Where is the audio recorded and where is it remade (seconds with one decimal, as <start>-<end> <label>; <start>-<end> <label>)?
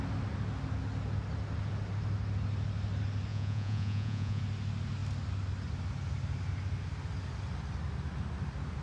0.0-3.3 recorded; 3.3-4.4 remade; 4.4-8.8 recorded